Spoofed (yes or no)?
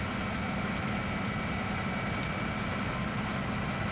no